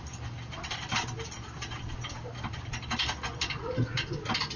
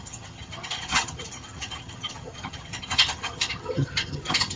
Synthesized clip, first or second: second